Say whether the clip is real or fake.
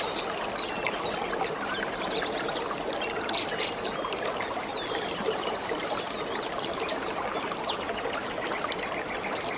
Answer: real